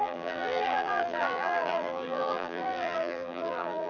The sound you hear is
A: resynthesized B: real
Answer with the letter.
A